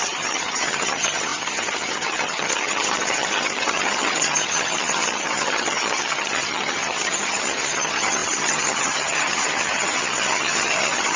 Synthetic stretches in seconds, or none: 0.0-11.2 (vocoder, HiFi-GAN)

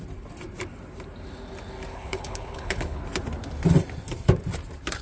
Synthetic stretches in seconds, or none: 1.9-3.0 (codec, HILCodec)

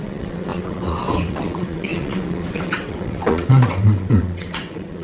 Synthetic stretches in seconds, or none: 0.0-5.0 (vocoder, WaveNeXt)